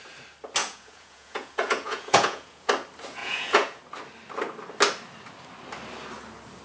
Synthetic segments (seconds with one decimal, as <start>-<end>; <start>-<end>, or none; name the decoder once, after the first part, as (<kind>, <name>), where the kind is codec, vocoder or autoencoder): 0.6-2.7 (vocoder, Vocos); 3.2-3.8